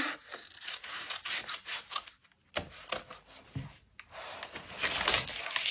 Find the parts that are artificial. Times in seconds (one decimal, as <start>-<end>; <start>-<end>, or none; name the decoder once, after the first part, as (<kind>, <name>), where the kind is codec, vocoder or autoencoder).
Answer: none